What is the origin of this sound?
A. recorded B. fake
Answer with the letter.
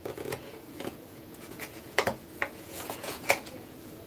B